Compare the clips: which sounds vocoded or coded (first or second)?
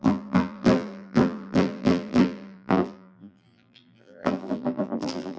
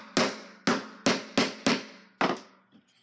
first